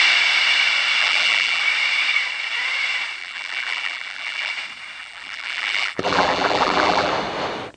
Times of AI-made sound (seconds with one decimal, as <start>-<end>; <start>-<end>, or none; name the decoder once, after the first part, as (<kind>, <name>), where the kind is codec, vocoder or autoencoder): 1.0-1.6 (vocoder, BigVGAN v2); 3.2-4.5; 5.0-7.1